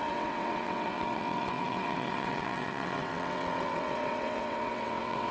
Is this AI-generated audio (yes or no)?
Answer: yes